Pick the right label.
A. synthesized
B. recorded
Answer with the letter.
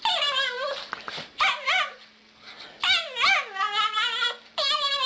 A